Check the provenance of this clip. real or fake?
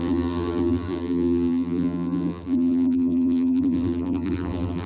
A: fake